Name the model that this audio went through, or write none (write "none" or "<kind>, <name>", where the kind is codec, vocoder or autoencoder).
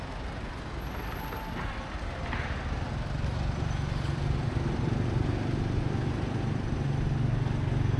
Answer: none